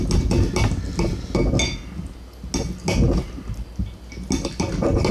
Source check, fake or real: real